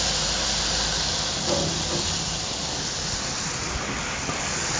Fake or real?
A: real